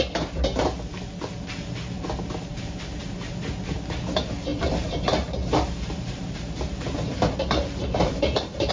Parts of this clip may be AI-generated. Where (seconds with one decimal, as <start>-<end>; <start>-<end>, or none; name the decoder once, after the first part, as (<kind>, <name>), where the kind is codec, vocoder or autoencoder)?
2.5-3.0 (vocoder, BigVGAN v2); 4.5-8.7